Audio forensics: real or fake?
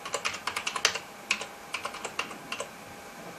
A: real